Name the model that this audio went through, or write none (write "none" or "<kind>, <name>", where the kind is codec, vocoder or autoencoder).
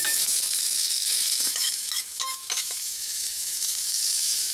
autoencoder, DAC-VAE